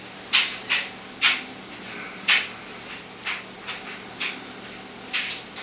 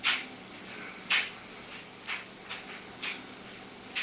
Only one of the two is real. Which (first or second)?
first